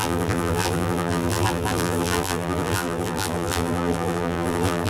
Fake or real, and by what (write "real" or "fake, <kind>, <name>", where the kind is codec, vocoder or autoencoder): fake, vocoder, BigVGAN v2